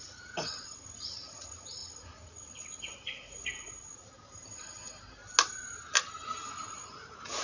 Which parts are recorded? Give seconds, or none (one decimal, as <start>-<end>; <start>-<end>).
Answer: 4.0-6.7